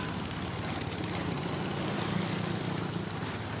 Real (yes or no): yes